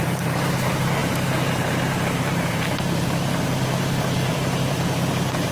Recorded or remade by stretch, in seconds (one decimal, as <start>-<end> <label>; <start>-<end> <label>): 0.0-5.5 remade